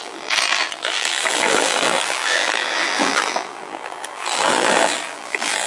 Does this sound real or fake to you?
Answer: fake